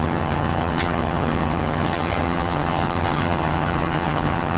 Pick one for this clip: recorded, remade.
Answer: remade